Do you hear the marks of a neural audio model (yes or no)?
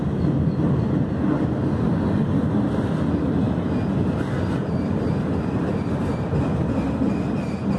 no